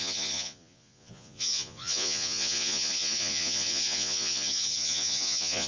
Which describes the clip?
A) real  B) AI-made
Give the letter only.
B